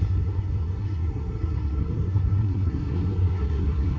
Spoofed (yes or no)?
yes